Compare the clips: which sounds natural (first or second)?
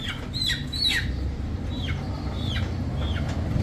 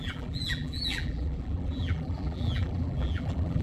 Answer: first